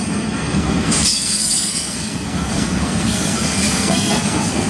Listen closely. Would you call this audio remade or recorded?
remade